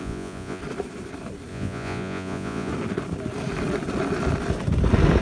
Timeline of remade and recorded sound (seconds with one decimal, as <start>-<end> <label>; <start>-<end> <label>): 0.0-0.6 remade; 0.6-1.5 recorded; 1.5-2.7 remade; 2.7-5.2 recorded